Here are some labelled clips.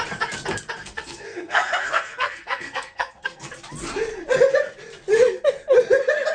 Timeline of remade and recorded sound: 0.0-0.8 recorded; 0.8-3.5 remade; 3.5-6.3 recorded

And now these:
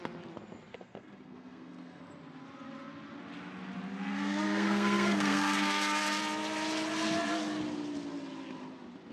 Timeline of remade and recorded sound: 0.0-0.7 recorded; 0.7-2.0 remade; 2.0-4.1 recorded; 4.1-6.2 remade; 6.2-9.1 recorded

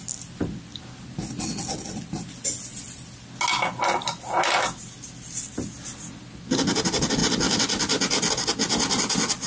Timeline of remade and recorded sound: 0.0-9.5 recorded

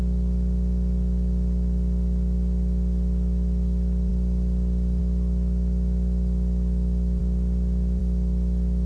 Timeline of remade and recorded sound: 0.0-8.9 recorded